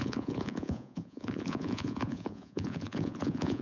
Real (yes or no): no